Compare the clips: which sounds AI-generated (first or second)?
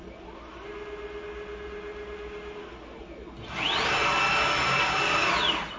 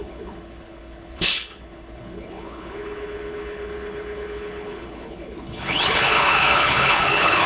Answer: second